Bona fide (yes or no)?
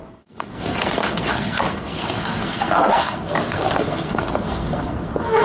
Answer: no